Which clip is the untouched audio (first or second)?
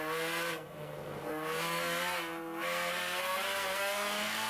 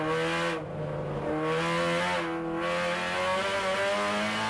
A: second